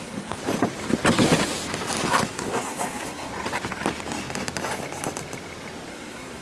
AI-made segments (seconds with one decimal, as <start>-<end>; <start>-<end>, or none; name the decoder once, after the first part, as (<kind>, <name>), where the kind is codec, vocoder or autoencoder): 0.0-0.4 (codec, SNAC); 2.1-3.3; 5.9-6.4